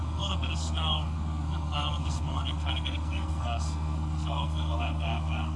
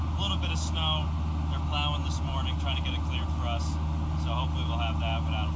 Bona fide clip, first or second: second